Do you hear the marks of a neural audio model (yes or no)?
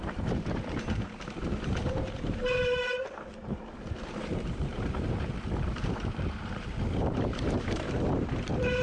yes